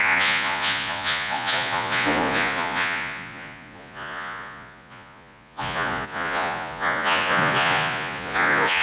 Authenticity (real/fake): fake